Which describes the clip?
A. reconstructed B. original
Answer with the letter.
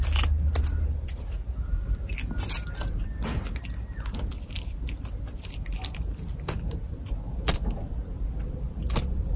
B